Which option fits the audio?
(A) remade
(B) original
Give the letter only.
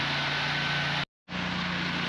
B